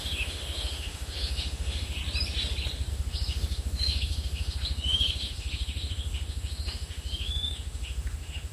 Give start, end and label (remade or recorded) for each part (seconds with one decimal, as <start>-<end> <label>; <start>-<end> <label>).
0.0-2.0 remade; 2.0-2.9 recorded; 2.9-8.5 remade